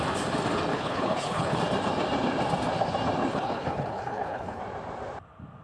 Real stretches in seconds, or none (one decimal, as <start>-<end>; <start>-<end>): 0.0-0.7; 1.6-3.3; 4.6-5.6